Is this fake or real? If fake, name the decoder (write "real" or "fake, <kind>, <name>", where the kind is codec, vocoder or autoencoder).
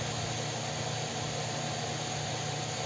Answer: real